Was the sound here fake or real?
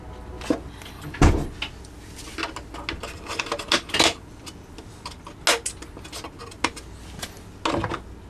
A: real